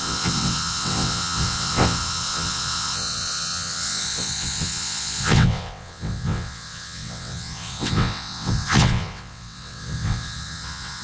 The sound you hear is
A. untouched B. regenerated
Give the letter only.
B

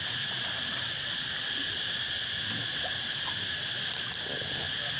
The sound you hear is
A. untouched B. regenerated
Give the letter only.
A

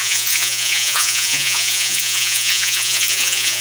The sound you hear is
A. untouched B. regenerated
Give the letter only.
B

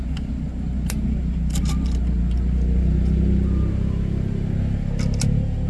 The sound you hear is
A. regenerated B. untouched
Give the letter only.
B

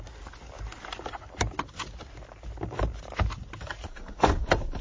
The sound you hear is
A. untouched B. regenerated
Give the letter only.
A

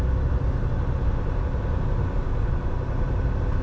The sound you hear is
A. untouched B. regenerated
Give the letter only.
B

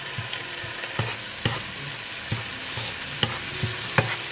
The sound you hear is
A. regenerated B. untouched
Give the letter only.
B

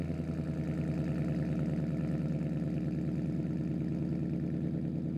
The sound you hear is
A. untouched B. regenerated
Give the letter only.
A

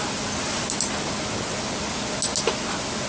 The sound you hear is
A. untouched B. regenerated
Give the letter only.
A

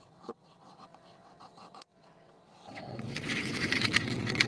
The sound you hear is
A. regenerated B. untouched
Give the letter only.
A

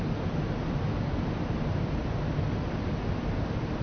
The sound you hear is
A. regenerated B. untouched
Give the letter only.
B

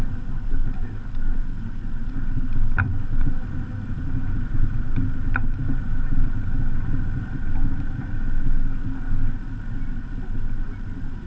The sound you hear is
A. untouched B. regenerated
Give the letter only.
A